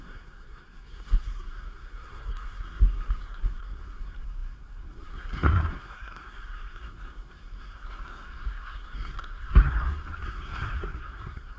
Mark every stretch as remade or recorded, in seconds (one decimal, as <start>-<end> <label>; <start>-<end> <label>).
0.0-11.6 remade